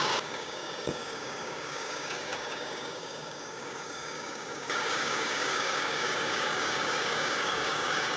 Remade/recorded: remade